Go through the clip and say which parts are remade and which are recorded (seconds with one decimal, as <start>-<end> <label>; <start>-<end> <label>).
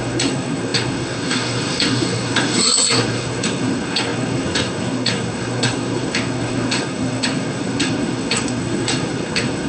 0.0-9.7 remade